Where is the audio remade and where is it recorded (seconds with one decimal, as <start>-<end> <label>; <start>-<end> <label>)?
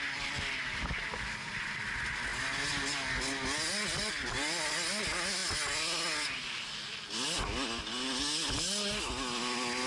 0.0-9.9 recorded